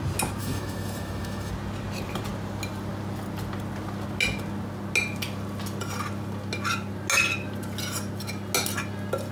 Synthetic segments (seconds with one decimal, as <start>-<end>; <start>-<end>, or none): 0.4-1.5